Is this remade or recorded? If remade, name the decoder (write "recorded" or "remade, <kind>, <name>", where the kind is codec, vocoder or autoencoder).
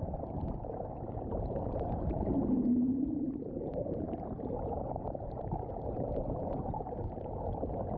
remade, vocoder, BigVGAN v2